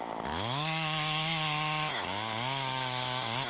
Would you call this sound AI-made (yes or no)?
yes